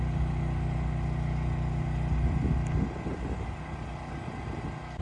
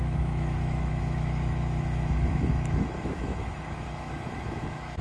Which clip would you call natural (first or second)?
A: first